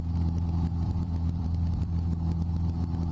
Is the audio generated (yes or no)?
yes